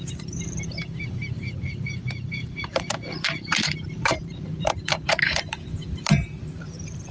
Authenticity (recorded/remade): remade